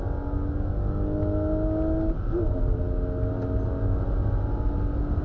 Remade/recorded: recorded